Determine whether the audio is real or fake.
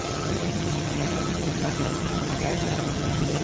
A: fake